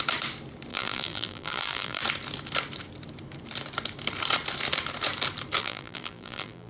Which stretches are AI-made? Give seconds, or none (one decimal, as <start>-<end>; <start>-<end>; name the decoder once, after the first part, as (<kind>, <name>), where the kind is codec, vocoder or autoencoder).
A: 0.7-2.0 (vocoder, BigVGAN v2); 5.6-6.7